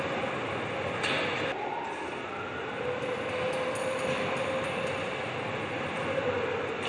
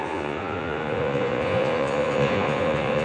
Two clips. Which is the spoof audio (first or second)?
second